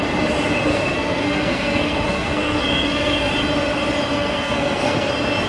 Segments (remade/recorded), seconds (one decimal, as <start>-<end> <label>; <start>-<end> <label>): 0.0-0.7 recorded; 0.7-3.3 remade; 3.3-4.1 recorded; 4.1-5.1 remade; 5.1-5.5 recorded